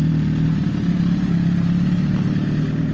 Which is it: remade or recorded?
recorded